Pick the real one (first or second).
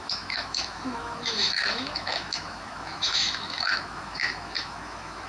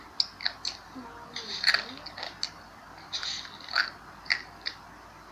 second